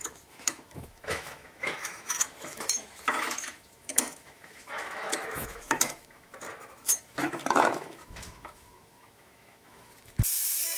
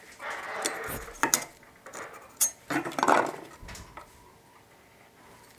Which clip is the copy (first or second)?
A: first